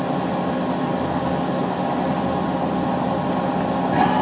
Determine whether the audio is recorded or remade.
recorded